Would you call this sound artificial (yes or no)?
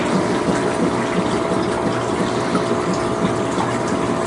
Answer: yes